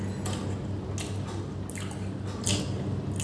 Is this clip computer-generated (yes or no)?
no